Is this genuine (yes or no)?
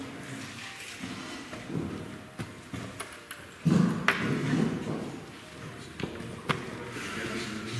yes